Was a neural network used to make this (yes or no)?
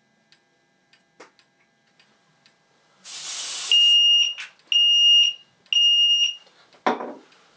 no